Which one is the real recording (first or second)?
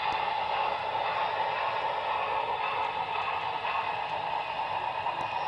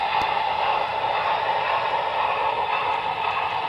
first